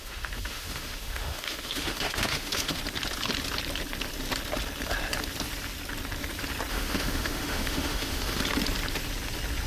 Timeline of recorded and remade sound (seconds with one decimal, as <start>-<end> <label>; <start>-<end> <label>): 0.0-2.8 remade; 2.8-6.7 recorded; 6.7-8.4 remade; 8.4-9.7 recorded